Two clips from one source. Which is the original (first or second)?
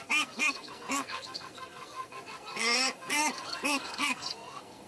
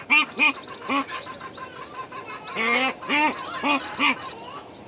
second